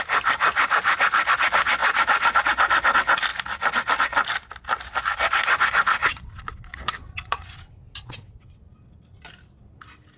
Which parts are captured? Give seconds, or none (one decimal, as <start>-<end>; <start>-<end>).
0.0-6.0; 8.6-10.2